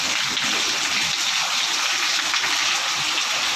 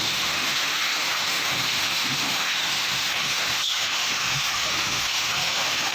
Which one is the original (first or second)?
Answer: first